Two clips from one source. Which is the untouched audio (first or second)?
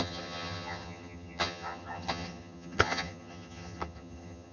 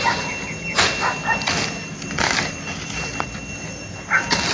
second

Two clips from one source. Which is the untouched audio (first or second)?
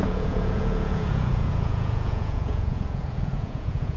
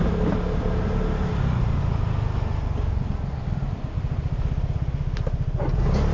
second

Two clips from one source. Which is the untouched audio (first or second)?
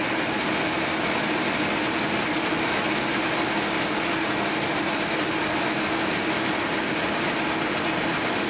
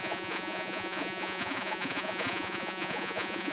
first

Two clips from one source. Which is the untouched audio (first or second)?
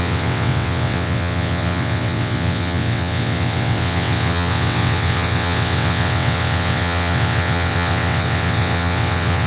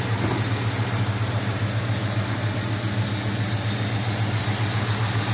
second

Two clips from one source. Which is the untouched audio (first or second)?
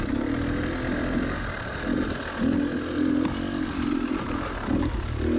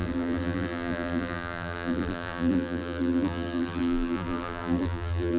first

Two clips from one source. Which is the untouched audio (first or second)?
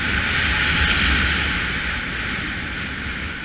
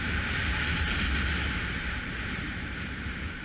first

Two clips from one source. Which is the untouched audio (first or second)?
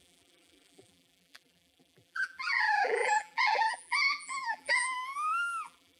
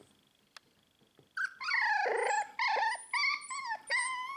second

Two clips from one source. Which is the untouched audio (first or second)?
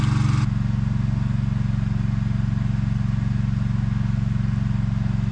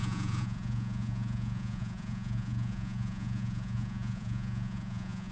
first